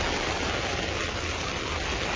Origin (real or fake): real